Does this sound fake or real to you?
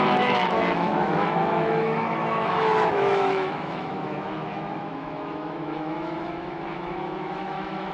fake